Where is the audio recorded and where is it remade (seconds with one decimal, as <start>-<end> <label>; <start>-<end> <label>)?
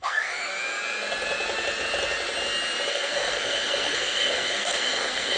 0.0-0.5 remade; 0.5-2.9 recorded; 2.9-5.4 remade